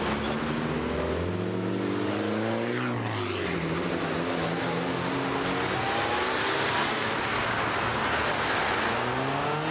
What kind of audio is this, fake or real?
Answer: real